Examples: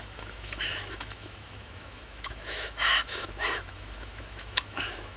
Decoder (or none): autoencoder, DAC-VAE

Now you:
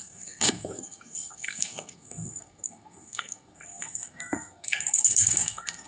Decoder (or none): codec, SNAC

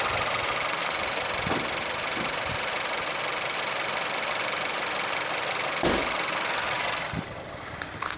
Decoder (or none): none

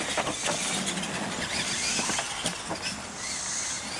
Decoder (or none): none